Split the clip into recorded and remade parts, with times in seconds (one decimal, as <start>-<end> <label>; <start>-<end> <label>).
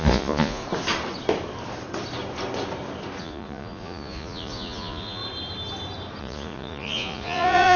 0.0-0.6 remade; 0.6-3.2 recorded; 3.2-5.2 remade; 5.2-6.2 recorded; 6.2-7.8 remade